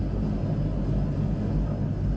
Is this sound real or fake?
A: real